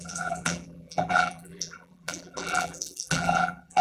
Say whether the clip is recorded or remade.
remade